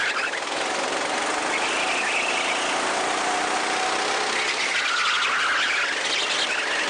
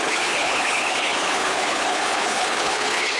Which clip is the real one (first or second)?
first